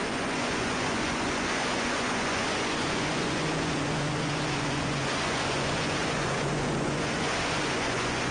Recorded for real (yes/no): no